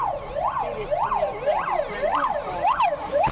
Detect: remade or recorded remade